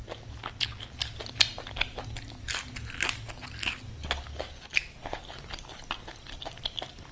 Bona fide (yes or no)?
yes